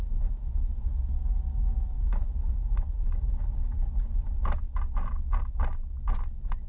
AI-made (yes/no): no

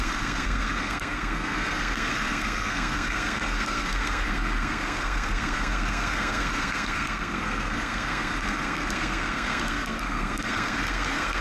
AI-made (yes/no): yes